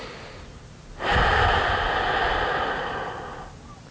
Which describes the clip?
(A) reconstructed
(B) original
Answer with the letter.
B